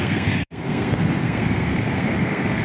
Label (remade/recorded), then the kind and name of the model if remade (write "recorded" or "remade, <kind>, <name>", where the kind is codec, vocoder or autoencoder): remade, codec, SNAC